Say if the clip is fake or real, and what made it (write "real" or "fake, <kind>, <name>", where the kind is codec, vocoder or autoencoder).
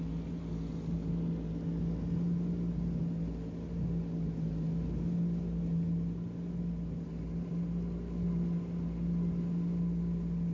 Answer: real